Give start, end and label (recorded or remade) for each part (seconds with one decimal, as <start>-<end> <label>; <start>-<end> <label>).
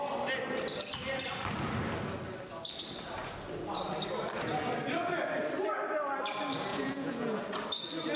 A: 0.0-6.7 recorded; 6.7-7.4 remade; 7.4-8.2 recorded